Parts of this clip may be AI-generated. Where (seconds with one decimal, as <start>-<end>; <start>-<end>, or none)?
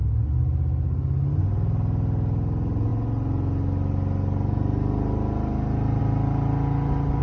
none